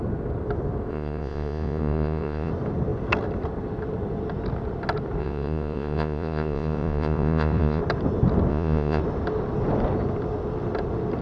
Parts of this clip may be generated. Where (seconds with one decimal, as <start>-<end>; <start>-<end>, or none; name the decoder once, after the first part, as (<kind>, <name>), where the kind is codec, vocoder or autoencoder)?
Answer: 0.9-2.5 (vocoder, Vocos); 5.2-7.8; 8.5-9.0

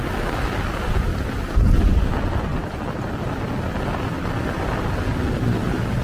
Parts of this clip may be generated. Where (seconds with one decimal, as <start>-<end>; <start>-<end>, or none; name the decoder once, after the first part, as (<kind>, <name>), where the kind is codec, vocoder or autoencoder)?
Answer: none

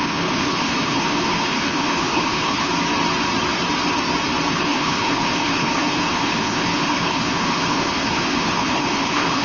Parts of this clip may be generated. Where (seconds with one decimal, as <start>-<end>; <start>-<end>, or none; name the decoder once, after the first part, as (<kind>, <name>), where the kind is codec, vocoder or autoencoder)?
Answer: 0.0-2.7 (codec, HILCodec); 4.5-9.4

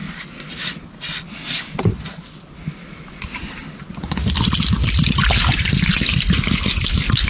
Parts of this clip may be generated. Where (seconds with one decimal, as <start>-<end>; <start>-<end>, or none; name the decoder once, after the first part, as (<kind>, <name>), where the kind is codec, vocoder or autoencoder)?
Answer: none